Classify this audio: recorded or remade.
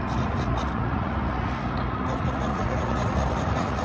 remade